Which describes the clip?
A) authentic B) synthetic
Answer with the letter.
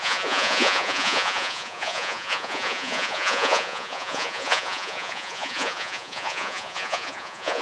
B